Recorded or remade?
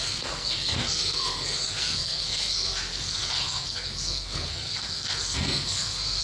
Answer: remade